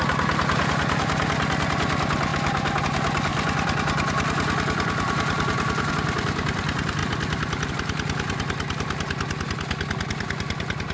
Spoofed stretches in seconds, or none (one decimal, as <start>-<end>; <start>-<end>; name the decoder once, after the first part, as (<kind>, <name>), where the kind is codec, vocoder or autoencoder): 3.3-5.9 (vocoder, BigVGAN v2); 7.0-7.7